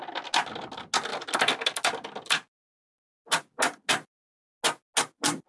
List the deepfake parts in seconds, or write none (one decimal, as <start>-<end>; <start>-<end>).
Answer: none